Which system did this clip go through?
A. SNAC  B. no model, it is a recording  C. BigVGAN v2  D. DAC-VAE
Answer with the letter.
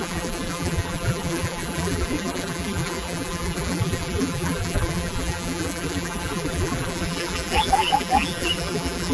C